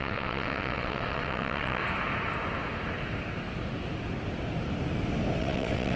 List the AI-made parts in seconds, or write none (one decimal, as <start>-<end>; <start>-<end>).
0.0-1.8; 5.4-6.0